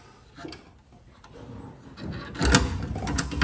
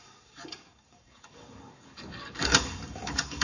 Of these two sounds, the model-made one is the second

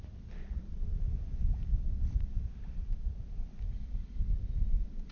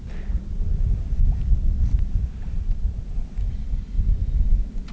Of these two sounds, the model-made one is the first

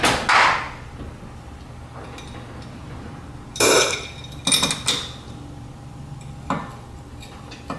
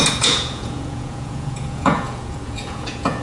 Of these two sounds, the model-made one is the second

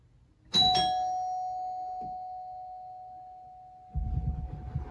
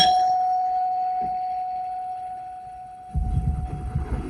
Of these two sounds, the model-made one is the second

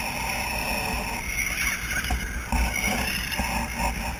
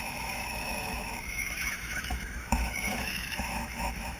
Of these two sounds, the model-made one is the second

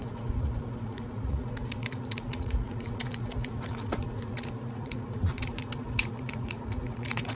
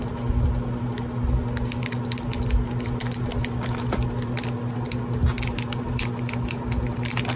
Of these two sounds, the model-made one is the first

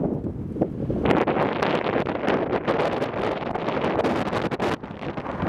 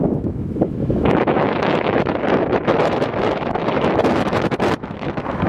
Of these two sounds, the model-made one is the second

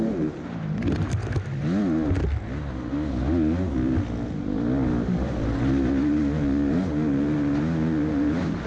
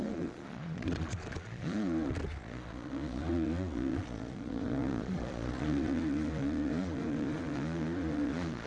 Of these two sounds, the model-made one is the second